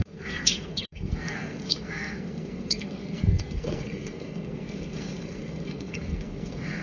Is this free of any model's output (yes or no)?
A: no